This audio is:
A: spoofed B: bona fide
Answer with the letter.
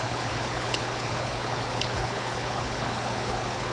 A